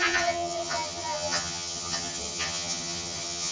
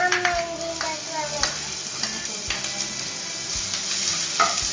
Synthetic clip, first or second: first